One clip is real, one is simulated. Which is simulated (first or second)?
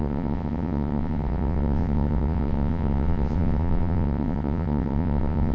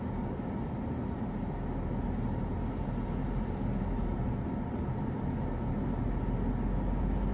first